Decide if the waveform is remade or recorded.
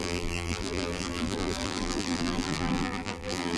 remade